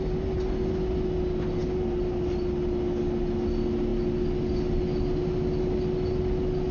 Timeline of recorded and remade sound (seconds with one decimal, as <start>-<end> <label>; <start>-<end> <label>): 0.0-6.7 recorded